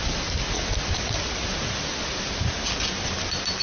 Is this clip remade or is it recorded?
remade